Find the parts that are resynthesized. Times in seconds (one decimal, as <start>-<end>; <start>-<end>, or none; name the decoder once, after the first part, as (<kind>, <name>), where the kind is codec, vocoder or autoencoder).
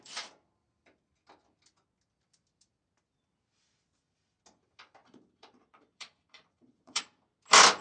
5.0-7.0 (vocoder, Vocos)